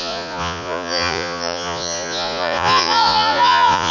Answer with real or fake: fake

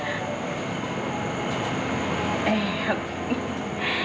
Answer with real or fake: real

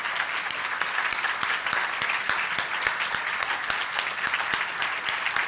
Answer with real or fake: real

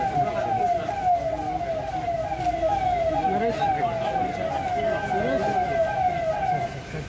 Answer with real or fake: real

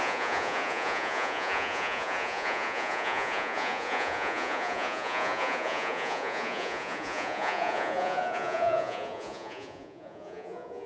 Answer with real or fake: fake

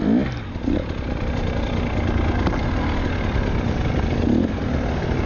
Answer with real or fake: real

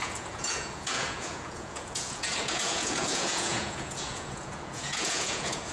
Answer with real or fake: fake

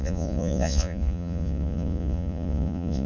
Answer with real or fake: fake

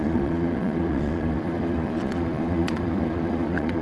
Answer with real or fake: fake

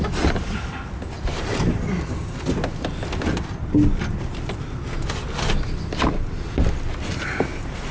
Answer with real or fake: real